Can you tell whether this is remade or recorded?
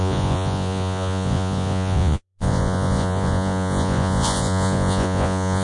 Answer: remade